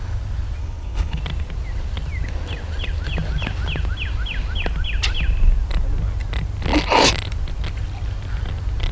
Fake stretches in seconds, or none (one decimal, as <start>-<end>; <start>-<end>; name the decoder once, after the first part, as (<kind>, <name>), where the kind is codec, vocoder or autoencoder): 0.6-1.2 (codec, HILCodec)